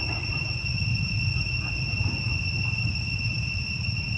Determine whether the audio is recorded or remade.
recorded